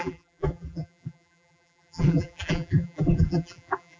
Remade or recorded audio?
remade